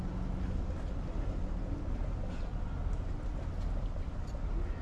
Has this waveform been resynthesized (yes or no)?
no